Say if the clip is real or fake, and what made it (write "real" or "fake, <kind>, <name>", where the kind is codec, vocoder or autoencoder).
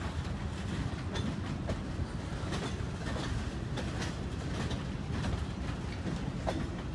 real